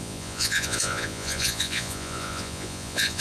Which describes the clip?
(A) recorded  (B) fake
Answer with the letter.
B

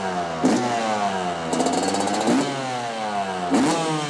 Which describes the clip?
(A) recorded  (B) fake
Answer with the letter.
A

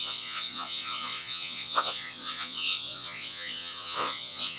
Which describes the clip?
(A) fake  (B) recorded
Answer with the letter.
A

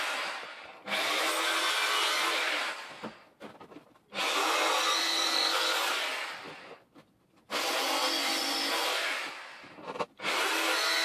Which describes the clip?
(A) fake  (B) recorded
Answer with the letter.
B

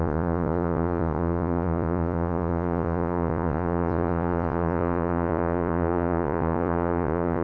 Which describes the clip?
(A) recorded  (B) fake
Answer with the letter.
B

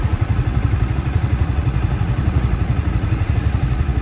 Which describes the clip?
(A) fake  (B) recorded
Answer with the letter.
A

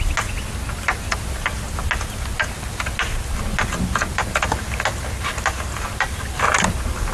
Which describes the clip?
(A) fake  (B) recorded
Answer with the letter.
B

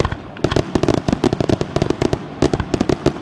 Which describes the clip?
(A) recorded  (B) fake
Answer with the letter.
A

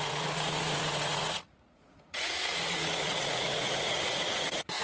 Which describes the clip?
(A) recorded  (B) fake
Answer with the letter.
B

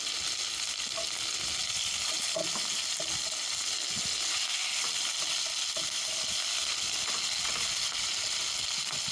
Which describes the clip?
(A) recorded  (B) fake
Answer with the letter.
A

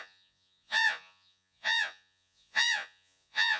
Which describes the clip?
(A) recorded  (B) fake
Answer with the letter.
B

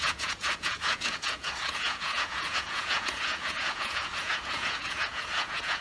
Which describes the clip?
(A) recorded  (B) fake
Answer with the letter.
B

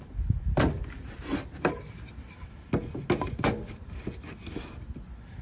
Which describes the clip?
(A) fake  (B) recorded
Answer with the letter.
B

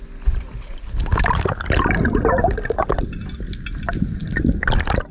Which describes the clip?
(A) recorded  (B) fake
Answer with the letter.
A